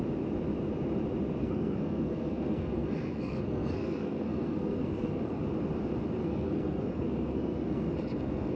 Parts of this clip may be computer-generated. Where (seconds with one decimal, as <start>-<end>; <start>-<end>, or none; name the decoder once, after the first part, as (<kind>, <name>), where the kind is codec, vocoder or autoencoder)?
1.4-5.4 (codec, SNAC); 6.2-8.6